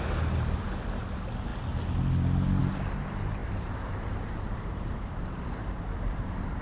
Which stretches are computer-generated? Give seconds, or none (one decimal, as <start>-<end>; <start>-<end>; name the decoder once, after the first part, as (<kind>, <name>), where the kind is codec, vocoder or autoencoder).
3.4-6.6 (vocoder, BigVGAN v2)

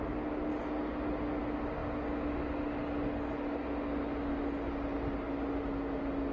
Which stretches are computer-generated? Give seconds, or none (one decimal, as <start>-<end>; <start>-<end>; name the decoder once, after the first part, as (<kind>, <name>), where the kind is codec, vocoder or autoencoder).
none

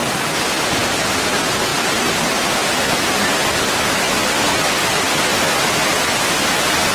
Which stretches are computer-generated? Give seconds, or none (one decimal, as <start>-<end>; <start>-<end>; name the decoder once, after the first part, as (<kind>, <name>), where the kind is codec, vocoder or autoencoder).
none

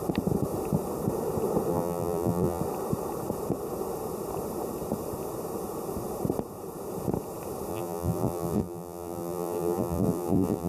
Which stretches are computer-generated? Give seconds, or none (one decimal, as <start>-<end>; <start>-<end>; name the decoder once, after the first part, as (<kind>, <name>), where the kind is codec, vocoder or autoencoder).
1.7-2.6 (vocoder, BigVGAN v2); 7.7-10.7

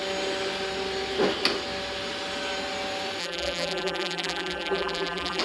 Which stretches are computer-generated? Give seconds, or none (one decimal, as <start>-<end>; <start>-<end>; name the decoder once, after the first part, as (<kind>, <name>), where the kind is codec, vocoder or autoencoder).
3.2-5.4 (vocoder, BigVGAN v2)

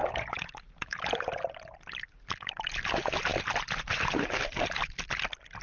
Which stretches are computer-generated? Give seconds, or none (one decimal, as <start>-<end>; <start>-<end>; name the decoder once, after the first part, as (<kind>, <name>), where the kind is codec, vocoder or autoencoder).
0.0-1.4 (vocoder, BigVGAN v2); 3.3-4.4

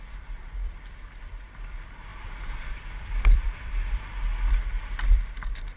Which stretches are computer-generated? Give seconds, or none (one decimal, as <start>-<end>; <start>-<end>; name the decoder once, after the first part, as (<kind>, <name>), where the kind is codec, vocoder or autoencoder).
0.0-2.1 (vocoder, BigVGAN v2); 2.7-4.3

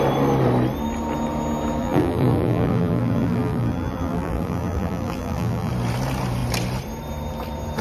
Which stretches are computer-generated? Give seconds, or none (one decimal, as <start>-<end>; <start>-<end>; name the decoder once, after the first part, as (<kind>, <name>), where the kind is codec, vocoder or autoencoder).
1.8-5.7 (vocoder, BigVGAN v2)